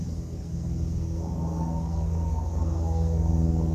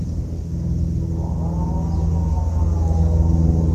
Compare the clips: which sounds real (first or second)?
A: second